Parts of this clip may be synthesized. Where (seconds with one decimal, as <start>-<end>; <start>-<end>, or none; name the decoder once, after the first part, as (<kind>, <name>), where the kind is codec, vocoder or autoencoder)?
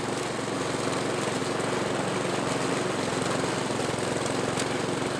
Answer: none